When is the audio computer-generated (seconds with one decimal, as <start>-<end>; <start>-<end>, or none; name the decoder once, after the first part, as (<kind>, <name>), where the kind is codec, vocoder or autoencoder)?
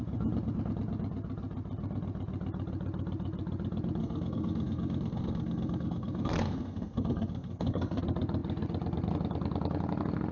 4.0-8.0 (codec, SNAC)